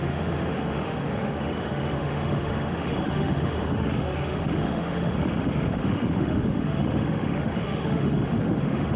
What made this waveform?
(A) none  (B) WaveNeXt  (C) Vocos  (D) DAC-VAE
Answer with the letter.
D